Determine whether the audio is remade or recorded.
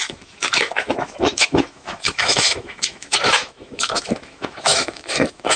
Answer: remade